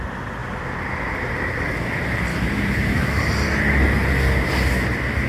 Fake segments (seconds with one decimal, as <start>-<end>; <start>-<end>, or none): 2.3-3.2